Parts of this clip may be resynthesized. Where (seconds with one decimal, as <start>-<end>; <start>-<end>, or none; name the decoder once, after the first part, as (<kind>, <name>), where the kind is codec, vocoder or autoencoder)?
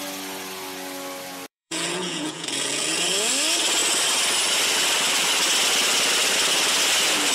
1.5-3.3 (vocoder, Vocos)